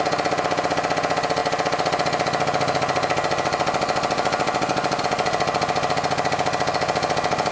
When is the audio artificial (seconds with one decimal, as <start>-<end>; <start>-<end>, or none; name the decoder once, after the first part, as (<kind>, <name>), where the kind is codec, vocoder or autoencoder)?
none